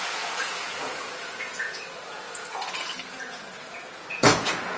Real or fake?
fake